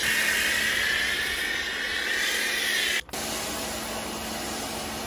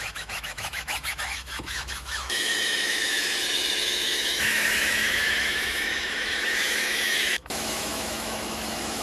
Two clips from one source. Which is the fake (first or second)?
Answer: second